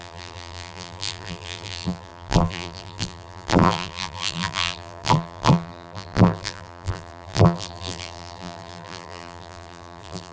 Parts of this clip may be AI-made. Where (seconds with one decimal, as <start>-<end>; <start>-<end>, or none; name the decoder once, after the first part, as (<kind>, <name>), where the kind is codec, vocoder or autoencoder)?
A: 0.0-10.3 (vocoder, BigVGAN v2)